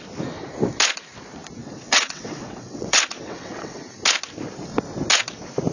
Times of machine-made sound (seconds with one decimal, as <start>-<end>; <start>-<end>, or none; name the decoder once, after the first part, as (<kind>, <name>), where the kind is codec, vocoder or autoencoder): 1.6-3.9 (vocoder, WaveNeXt)